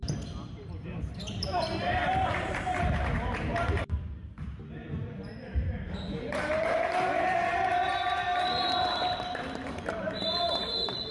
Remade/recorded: remade